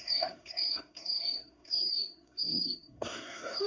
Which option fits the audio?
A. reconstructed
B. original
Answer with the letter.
A